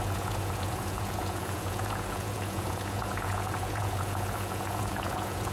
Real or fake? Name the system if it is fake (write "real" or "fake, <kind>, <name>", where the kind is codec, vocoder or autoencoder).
fake, vocoder, Vocos